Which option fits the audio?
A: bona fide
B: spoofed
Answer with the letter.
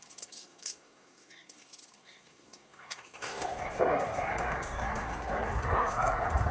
B